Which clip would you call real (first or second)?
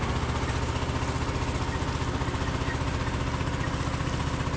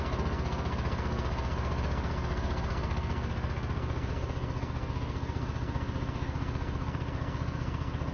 first